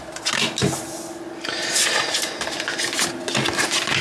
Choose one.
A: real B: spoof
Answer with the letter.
A